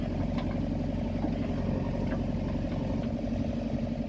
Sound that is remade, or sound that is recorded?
recorded